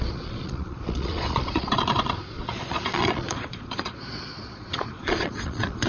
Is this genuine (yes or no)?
no